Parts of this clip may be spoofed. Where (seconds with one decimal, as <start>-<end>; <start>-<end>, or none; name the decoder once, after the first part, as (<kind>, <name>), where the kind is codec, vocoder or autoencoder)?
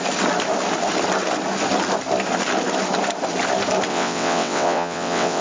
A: 3.9-5.4 (vocoder, WaveNeXt)